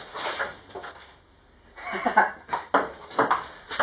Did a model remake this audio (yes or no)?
no